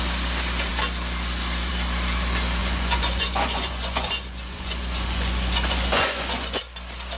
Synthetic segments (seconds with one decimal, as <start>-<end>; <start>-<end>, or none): 2.6-6.6